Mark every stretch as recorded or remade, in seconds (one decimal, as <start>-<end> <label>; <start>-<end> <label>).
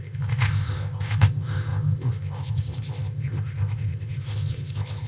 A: 0.0-5.1 remade